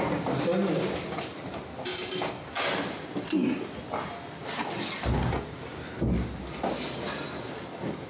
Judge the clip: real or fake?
real